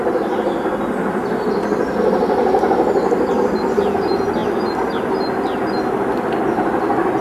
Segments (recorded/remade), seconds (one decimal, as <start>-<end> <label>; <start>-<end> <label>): 0.0-7.2 recorded